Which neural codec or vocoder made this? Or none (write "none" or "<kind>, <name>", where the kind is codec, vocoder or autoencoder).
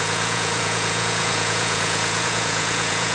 vocoder, Vocos